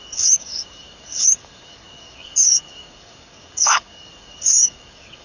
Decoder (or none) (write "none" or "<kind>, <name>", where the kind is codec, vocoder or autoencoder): codec, DAC